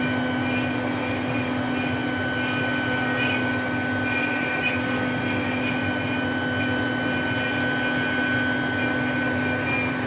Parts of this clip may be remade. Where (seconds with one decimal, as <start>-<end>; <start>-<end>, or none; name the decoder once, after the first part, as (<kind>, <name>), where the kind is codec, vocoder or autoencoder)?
none